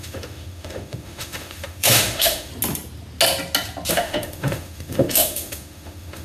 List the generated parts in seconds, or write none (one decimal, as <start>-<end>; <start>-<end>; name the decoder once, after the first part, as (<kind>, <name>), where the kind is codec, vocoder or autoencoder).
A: 0.0-2.5 (autoencoder, DAC-VAE); 3.9-6.2